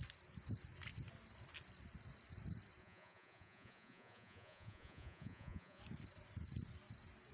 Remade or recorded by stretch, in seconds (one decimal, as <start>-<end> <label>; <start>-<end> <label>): 0.0-2.8 recorded; 2.8-5.8 remade; 5.8-7.3 recorded

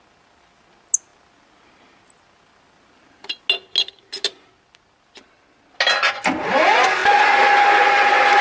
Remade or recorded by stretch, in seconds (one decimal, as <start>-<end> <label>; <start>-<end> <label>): 0.0-8.4 recorded

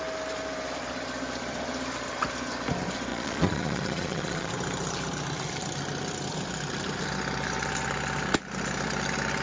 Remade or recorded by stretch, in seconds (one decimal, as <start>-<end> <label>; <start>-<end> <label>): 0.0-3.1 recorded; 3.1-4.5 remade; 4.5-9.4 recorded